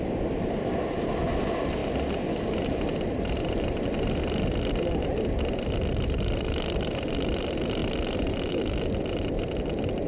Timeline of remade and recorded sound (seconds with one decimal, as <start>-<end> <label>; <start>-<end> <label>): 0.0-10.1 recorded